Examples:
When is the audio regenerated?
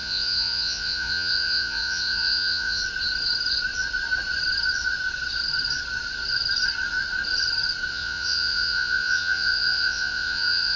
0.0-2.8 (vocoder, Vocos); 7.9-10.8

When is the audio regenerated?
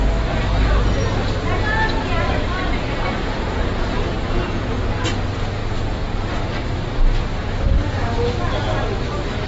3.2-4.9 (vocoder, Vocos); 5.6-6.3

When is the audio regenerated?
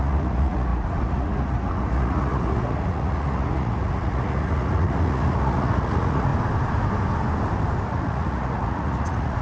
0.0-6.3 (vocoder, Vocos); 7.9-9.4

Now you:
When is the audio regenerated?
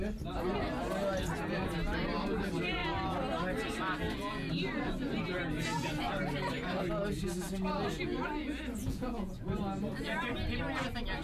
8.8-9.4 (vocoder, Vocos)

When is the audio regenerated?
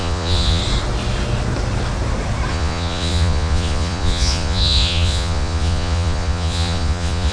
0.0-0.6 (vocoder, Vocos); 2.5-7.3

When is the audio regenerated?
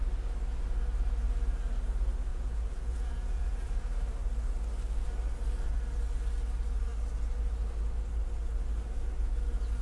2.3-3.8 (vocoder, Vocos)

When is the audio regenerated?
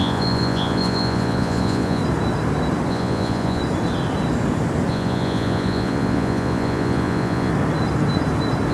0.0-2.0 (vocoder, Vocos); 2.9-3.6; 4.9-7.5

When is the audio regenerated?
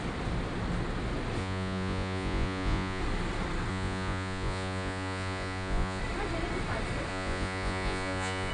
1.4-3.0 (vocoder, Vocos); 3.7-6.0; 7.1-8.5